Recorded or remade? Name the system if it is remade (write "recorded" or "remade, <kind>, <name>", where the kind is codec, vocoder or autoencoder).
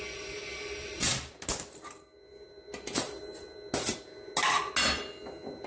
recorded